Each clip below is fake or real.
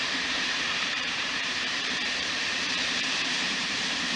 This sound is fake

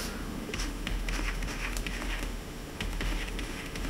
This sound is fake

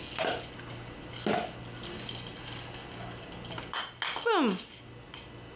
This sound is real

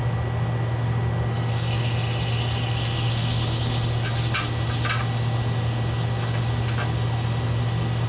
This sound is real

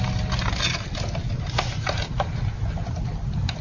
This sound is real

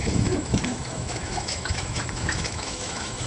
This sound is fake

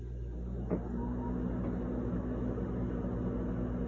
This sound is real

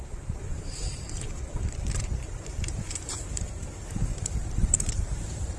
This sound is fake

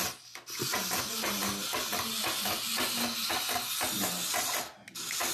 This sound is real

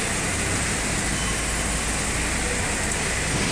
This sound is real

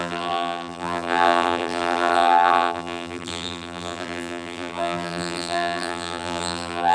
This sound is fake